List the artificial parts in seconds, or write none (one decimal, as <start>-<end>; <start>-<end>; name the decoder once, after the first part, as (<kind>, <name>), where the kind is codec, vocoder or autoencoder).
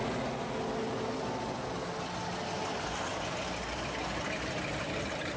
none